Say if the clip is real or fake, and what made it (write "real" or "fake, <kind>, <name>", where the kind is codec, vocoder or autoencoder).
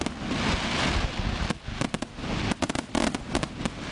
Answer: real